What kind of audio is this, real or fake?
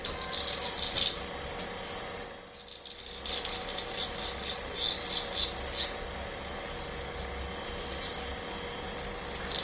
real